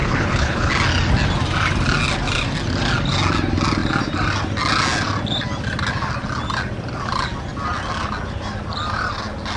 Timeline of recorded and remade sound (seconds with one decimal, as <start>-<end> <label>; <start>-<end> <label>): 0.0-0.7 remade; 0.7-9.6 recorded